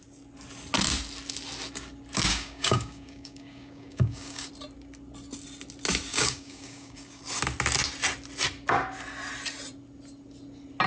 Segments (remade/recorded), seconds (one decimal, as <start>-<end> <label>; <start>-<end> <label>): 0.0-2.3 recorded; 2.3-4.5 remade; 4.5-6.1 recorded; 6.1-7.2 remade; 7.2-10.9 recorded